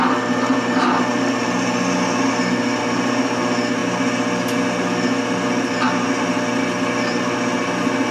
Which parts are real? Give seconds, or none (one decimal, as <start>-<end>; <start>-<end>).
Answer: 0.0-8.1